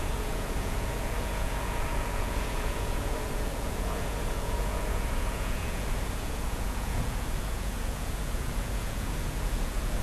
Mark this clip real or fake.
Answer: fake